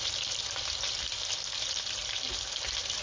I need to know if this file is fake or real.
fake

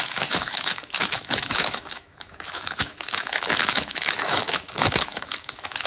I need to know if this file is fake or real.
fake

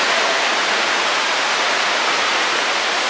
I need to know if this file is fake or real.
fake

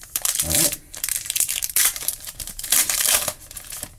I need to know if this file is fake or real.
fake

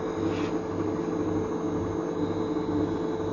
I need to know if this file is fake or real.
real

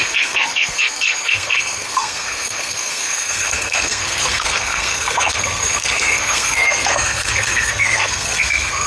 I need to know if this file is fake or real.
fake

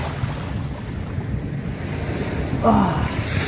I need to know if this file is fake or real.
real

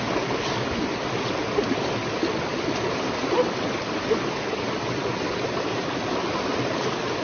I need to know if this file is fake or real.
real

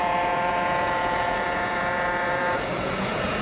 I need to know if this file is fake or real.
fake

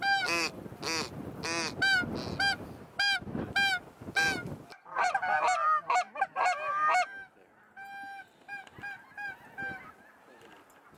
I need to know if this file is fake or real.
real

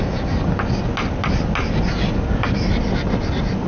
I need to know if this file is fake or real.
real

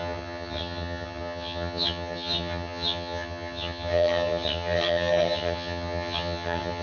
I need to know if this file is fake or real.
fake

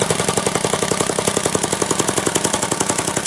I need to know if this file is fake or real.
real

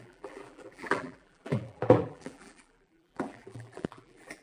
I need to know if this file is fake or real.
fake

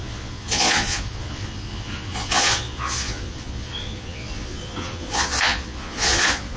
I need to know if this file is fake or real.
fake